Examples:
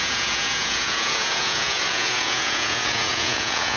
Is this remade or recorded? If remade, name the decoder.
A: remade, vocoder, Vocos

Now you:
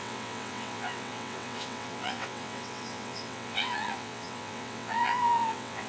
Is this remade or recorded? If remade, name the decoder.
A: remade, vocoder, WaveNeXt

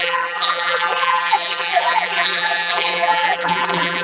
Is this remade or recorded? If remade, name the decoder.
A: remade, vocoder, BigVGAN v2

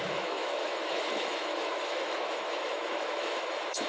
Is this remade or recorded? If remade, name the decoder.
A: remade, autoencoder, DAC-VAE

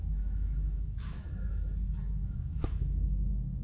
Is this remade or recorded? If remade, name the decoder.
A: remade, autoencoder, DAC-VAE